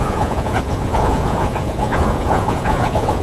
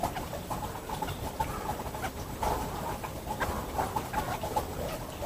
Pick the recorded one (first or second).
second